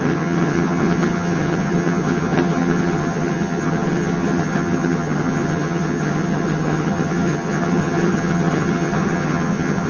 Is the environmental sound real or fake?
fake